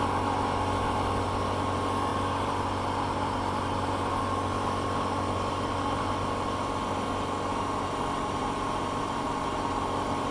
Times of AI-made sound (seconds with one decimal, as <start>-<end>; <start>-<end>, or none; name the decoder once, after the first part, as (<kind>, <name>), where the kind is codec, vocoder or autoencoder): none

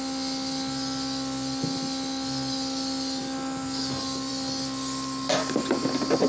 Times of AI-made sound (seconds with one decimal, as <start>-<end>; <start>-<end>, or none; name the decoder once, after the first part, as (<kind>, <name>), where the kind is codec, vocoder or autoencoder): none

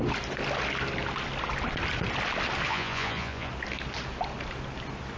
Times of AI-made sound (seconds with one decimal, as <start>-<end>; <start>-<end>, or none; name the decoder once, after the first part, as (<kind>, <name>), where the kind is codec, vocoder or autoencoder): 2.7-3.5 (vocoder, Vocos)

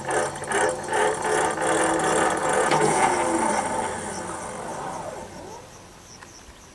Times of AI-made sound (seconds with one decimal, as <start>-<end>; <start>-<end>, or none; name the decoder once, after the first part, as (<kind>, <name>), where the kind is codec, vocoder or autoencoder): 2.4-3.1 (vocoder, Vocos)